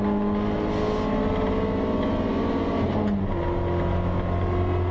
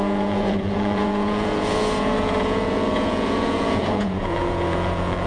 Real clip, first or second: first